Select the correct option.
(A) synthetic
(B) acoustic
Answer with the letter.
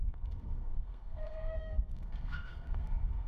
A